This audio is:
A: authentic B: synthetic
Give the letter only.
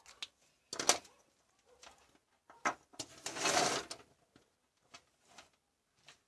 A